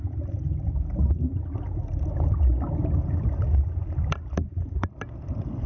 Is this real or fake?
real